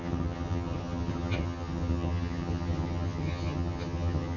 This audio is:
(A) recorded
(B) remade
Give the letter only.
B